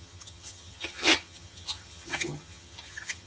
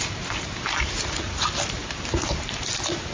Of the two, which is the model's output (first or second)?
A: first